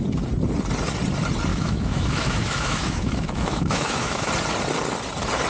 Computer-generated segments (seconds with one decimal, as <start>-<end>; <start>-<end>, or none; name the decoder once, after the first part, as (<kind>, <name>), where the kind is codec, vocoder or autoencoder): 1.5-4.3 (autoencoder, DAC-VAE)